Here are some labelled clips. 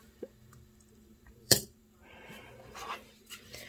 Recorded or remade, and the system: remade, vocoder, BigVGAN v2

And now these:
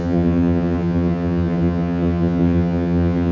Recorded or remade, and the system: remade, vocoder, HiFi-GAN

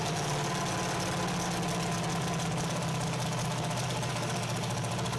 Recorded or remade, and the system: recorded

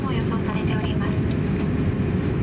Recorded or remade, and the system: recorded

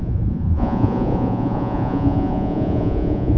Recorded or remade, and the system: remade, vocoder, Vocos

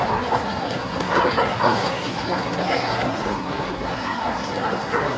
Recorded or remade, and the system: remade, codec, SNAC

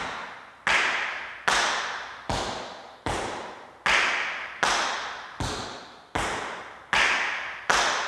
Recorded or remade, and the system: recorded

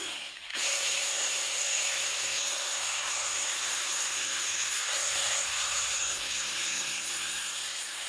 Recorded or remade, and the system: remade, codec, SNAC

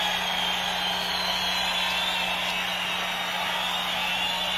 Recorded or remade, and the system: recorded